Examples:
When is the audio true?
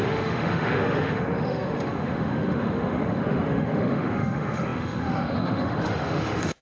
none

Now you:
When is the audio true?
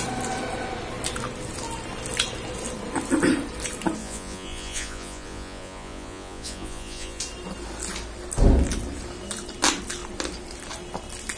0.0-4.0; 7.2-11.4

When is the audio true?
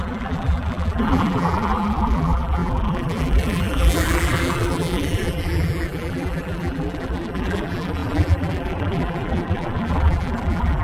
none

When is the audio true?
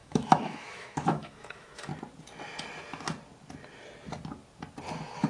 1.9-5.3